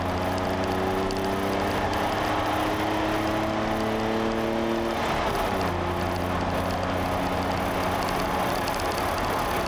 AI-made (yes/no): no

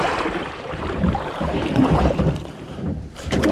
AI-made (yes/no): yes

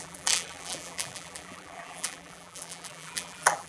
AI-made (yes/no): yes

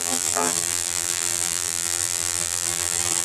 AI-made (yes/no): yes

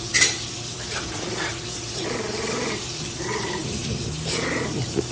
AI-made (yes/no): yes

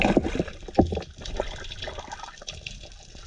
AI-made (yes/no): no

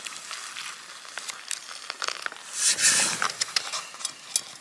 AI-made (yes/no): no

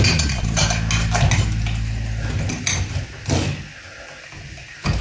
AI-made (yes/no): no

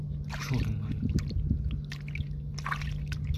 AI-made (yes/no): no